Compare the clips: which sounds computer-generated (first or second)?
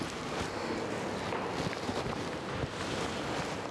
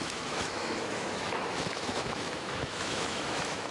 second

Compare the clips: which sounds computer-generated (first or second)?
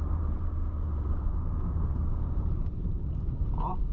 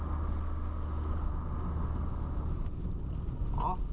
first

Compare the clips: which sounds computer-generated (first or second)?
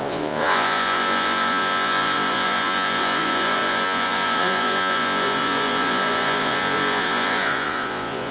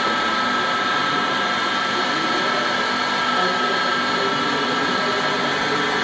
first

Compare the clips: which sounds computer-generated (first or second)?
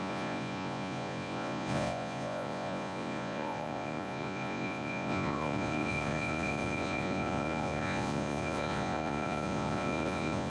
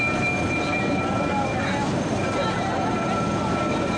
first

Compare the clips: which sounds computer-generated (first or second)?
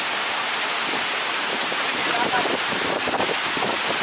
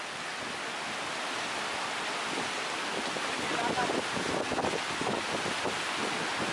first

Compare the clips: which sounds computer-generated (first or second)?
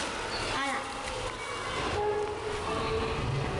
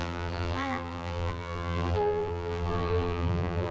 second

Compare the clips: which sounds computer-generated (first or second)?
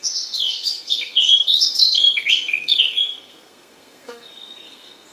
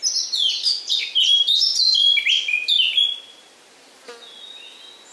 first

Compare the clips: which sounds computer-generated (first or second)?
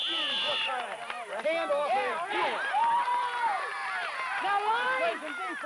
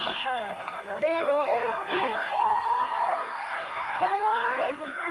second